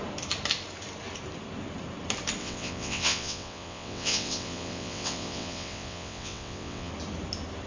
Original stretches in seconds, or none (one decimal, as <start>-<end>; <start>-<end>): 0.0-2.4; 6.9-7.7

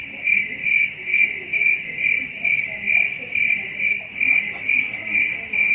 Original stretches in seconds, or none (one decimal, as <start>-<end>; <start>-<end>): 0.0-5.7

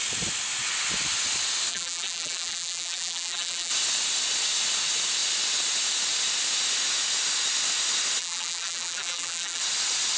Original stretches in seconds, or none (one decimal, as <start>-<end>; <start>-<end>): 0.0-1.7; 3.7-8.2; 9.6-10.2

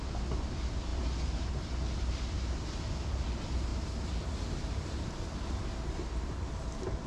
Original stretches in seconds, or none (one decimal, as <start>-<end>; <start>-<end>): 0.0-7.1

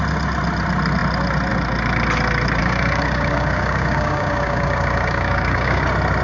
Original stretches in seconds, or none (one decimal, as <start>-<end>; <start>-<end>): 0.0-2.6; 5.8-6.2

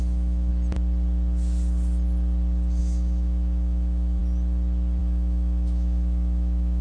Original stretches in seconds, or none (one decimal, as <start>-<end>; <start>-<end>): 0.5-2.8; 4.2-5.0

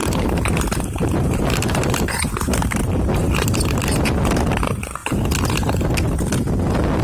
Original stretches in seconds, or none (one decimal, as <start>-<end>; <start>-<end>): 4.2-5.0; 5.8-7.0

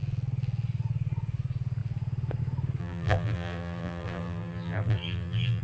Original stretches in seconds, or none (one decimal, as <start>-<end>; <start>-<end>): 0.0-2.8